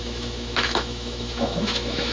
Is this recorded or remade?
remade